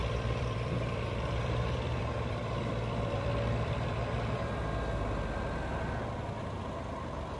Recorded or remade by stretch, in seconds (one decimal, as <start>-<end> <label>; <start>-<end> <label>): 0.0-4.4 remade; 4.4-7.4 recorded